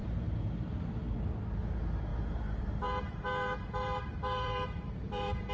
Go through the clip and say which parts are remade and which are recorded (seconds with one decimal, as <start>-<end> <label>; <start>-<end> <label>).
0.0-0.7 remade; 0.7-2.1 recorded; 2.1-5.5 remade